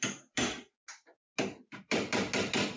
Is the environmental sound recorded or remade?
recorded